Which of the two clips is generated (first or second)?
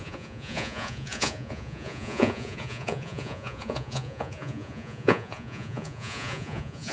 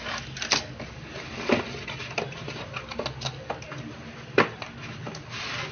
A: first